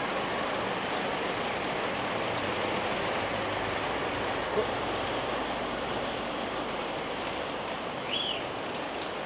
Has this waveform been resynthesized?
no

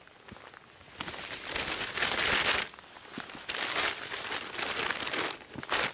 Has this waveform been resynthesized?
no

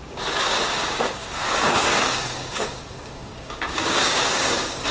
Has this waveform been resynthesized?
yes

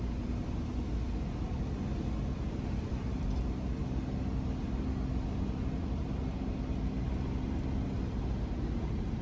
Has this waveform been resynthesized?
no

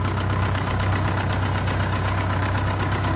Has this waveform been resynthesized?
yes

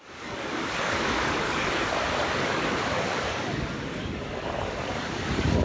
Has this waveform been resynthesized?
yes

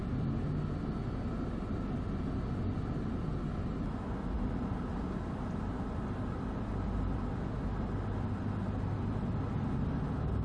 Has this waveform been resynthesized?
no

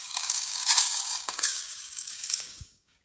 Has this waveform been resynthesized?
yes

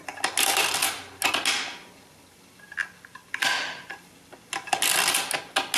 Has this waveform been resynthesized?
no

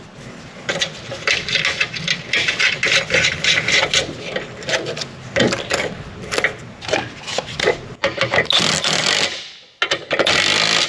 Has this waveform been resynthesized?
no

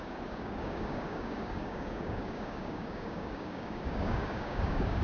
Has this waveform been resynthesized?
yes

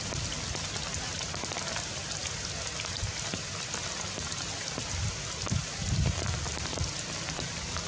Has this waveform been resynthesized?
no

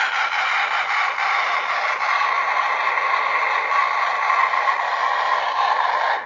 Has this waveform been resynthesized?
no